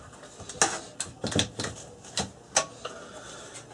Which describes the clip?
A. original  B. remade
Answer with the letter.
A